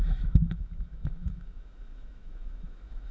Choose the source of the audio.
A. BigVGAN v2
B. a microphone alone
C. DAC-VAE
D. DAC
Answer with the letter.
C